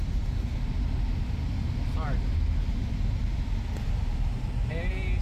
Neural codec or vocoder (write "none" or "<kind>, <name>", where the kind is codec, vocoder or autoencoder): none